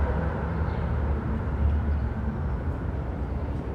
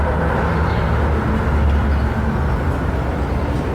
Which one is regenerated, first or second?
first